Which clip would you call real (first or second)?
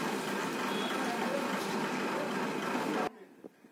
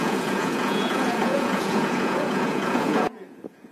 first